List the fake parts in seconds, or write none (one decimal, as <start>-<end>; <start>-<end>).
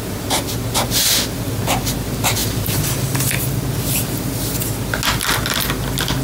none